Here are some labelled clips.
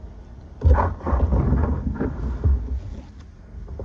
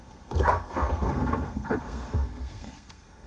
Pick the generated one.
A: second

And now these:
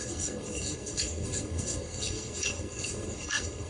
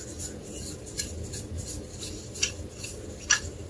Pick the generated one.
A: first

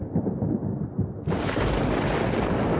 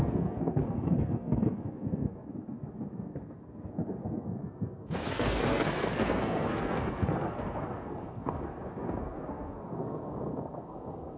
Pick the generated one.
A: second